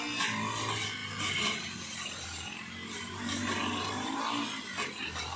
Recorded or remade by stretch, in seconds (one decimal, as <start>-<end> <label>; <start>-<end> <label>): 0.0-1.0 recorded; 1.0-4.2 remade; 4.2-5.4 recorded